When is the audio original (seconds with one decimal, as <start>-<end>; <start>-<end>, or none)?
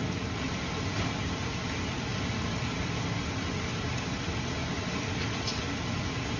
0.0-2.1; 3.0-4.6; 5.7-6.4